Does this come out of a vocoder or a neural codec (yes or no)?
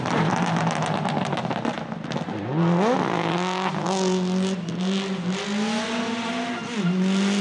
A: no